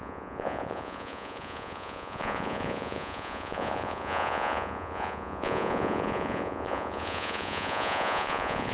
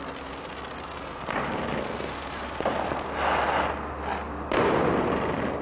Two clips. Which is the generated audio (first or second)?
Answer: first